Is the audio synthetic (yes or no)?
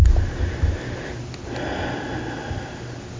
no